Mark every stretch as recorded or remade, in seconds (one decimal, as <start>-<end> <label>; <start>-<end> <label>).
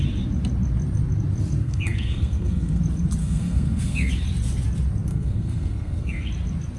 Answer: 0.0-1.6 recorded; 1.6-2.8 remade; 2.8-3.2 recorded; 3.2-4.1 remade; 4.1-5.1 recorded; 5.1-6.3 remade; 6.3-6.8 recorded